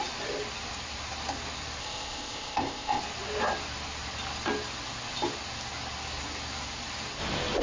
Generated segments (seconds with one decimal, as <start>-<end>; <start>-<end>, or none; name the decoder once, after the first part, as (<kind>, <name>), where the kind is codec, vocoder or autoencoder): 1.8-3.0 (codec, ZipCodec)